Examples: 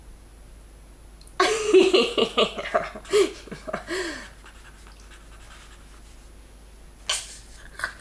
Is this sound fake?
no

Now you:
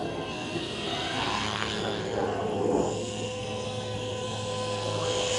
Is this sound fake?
yes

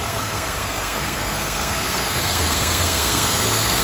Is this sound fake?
yes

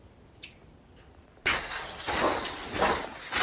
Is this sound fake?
no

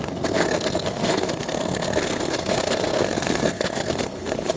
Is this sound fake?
yes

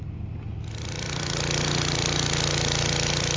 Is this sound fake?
no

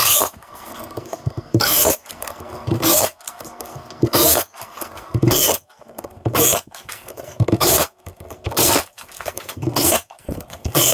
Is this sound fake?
yes